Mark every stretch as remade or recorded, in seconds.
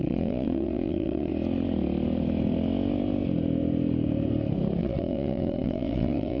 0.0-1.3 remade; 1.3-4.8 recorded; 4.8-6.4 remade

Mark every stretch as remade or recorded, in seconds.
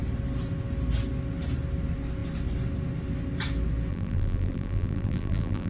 0.0-3.9 recorded; 3.9-5.7 remade